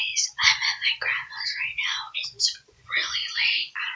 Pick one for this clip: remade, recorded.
remade